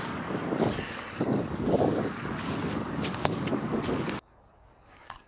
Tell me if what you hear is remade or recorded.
remade